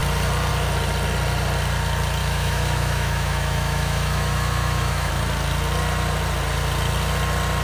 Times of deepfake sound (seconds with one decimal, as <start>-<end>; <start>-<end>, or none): 2.2-5.1